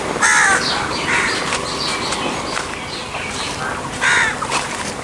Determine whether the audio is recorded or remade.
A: recorded